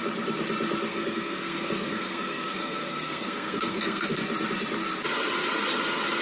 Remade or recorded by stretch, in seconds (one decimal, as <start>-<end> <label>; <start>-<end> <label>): 0.0-0.9 recorded; 0.9-4.2 remade; 4.2-6.2 recorded